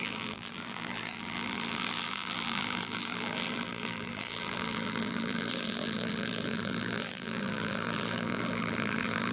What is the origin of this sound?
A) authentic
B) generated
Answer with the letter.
B